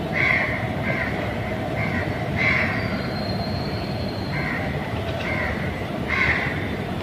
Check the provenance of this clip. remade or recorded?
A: remade